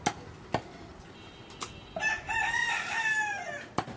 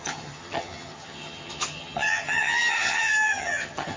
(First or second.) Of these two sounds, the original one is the first